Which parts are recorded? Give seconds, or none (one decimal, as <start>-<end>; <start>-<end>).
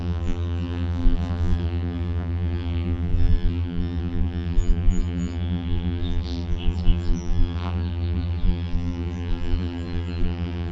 none